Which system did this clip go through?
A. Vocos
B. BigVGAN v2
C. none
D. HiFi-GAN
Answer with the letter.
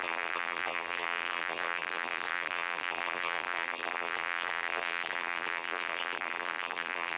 B